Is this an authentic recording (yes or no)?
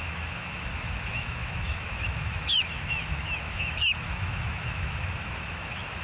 no